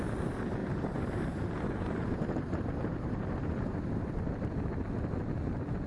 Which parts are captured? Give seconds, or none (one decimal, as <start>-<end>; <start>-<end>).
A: 0.0-0.6; 4.1-5.9